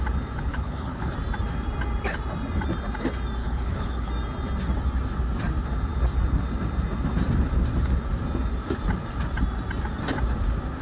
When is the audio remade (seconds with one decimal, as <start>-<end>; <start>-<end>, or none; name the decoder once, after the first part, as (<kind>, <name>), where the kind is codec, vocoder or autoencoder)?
0.5-1.1 (codec, HILCodec); 3.4-4.1